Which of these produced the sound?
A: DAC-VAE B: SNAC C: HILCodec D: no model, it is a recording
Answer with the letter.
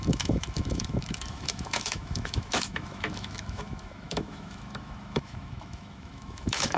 A